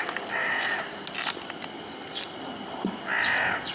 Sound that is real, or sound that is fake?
real